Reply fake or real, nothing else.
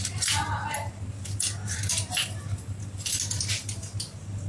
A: real